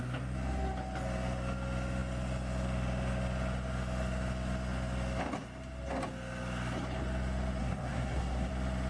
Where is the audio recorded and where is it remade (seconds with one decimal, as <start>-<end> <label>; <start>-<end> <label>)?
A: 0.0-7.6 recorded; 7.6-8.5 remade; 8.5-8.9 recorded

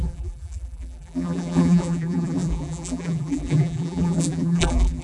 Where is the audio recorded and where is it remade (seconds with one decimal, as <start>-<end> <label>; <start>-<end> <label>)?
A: 0.0-5.0 remade

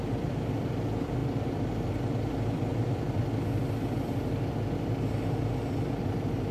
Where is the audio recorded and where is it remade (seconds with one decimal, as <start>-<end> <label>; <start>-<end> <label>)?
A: 0.0-1.2 recorded; 1.2-1.9 remade; 1.9-6.5 recorded

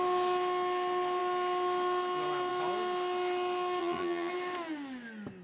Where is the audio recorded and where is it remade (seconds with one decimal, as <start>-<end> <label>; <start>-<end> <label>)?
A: 0.0-3.8 recorded; 3.8-4.3 remade; 4.3-5.4 recorded

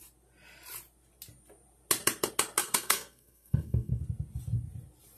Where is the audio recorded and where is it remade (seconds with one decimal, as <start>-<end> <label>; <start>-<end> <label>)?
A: 0.0-2.6 recorded; 2.6-4.0 remade; 4.0-5.2 recorded